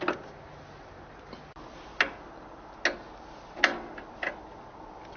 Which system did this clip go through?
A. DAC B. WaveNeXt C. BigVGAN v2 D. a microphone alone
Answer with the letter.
D